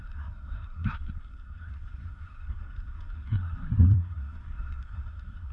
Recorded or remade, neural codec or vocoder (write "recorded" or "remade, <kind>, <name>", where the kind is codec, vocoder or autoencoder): remade, codec, SNAC